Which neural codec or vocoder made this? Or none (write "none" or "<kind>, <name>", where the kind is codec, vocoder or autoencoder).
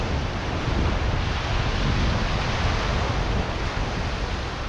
none